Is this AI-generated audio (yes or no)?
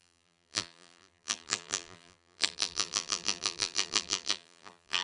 yes